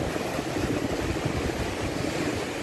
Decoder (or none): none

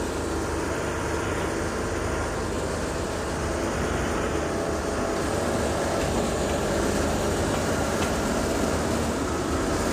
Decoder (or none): none